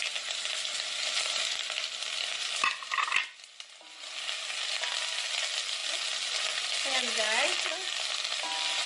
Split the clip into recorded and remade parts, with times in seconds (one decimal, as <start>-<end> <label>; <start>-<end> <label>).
0.0-8.9 recorded